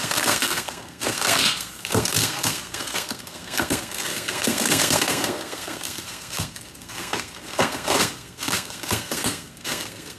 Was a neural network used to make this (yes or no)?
yes